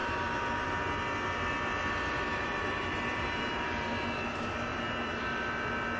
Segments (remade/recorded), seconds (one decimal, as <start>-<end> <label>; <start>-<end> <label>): 0.0-0.8 remade; 0.8-2.3 recorded; 2.3-3.9 remade; 3.9-4.7 recorded; 4.7-5.2 remade; 5.2-6.0 recorded